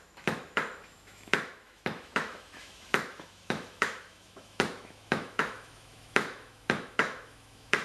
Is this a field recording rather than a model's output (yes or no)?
no